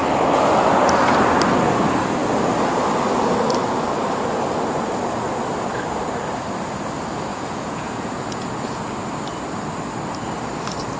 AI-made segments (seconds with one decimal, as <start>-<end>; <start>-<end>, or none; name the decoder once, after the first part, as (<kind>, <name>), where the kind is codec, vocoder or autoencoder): 7.3-8.9 (vocoder, Vocos)